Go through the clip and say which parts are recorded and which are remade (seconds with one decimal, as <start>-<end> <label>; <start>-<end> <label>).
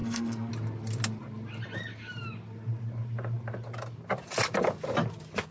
0.0-0.5 remade; 0.5-5.5 recorded